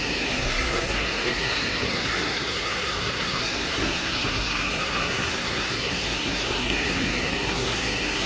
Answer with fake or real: fake